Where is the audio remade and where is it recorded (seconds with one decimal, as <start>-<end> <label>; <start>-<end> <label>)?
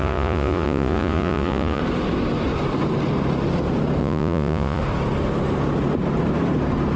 0.0-1.8 remade; 1.8-4.0 recorded; 4.0-4.8 remade; 4.8-7.0 recorded